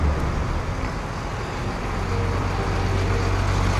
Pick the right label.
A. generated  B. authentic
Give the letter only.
B